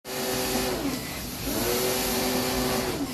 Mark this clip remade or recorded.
recorded